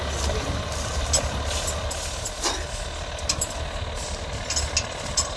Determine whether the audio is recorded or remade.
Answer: recorded